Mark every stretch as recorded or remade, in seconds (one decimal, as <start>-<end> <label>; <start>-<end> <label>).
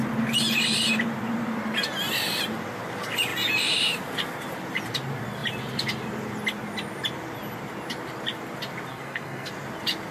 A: 0.0-8.9 recorded; 8.9-9.5 remade; 9.5-10.1 recorded